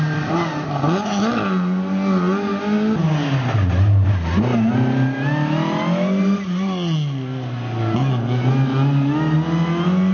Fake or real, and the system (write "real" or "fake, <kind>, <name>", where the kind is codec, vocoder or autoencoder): real